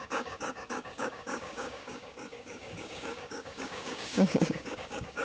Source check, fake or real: fake